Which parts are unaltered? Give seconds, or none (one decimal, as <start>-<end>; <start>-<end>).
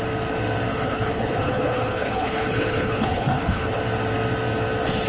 0.0-0.7; 3.8-5.1